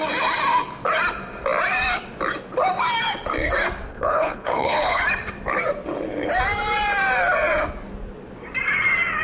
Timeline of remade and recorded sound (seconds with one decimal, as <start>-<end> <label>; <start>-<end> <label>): 0.0-3.9 recorded; 3.9-5.0 remade; 5.0-9.2 recorded